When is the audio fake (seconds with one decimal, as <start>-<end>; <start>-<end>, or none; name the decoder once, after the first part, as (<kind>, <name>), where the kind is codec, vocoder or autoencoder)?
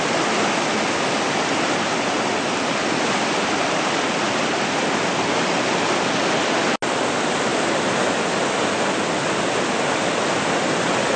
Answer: none